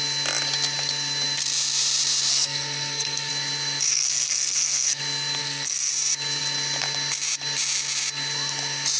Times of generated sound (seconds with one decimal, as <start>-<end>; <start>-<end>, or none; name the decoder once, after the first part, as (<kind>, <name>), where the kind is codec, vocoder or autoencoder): 2.3-3.3 (codec, SNAC); 3.9-5.0; 5.4-5.9